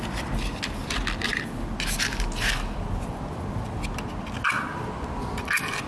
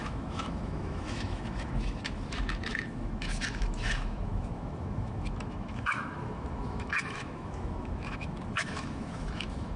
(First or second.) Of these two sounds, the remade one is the second